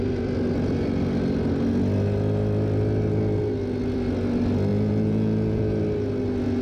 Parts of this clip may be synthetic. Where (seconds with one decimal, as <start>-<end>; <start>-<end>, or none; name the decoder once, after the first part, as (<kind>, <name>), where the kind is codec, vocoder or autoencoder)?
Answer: 4.7-5.8 (vocoder, Vocos)